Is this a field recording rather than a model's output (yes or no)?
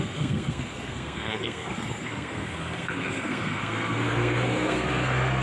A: no